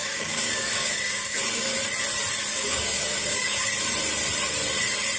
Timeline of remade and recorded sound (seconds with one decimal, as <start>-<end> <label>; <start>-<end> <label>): 0.0-1.8 remade; 1.8-2.5 recorded; 2.5-3.7 remade; 3.7-5.2 recorded